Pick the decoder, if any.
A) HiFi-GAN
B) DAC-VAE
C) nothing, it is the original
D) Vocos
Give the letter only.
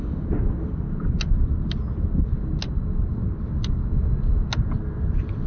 C